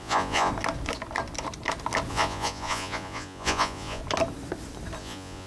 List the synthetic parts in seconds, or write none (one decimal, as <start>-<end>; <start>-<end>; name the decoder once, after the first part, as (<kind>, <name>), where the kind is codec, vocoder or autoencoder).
0.0-0.5 (vocoder, Vocos); 2.1-4.0; 5.0-5.5